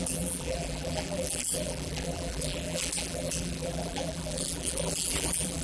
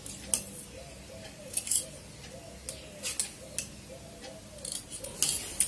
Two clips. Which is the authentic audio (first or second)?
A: second